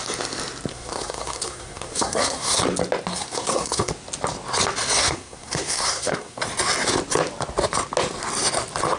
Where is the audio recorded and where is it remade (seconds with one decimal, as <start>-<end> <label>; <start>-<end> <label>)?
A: 0.0-0.7 recorded; 0.7-2.6 remade; 2.6-3.1 recorded; 3.1-3.9 remade; 3.9-5.0 recorded; 5.0-6.4 remade; 6.4-9.0 recorded